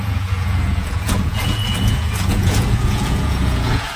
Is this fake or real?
fake